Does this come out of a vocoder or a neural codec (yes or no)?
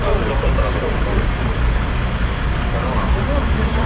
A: no